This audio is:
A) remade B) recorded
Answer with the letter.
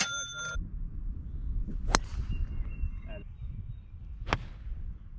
B